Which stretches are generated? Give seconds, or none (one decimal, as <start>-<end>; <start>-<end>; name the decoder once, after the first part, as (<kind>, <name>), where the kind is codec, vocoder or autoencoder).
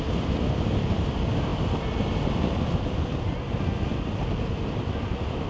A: 0.0-1.5 (vocoder, BigVGAN v2); 4.5-5.5